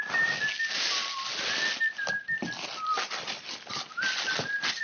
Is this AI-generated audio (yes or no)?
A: no